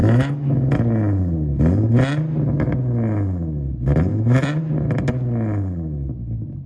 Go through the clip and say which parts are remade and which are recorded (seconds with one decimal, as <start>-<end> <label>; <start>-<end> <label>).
0.0-0.7 remade; 0.7-6.7 recorded